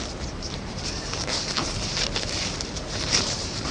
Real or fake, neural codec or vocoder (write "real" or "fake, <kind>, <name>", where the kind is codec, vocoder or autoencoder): fake, vocoder, BigVGAN v2